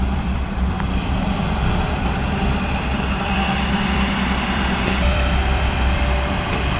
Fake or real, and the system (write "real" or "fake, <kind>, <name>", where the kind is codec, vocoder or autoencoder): fake, vocoder, BigVGAN v2